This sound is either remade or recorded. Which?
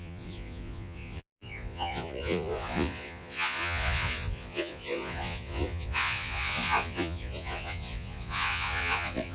remade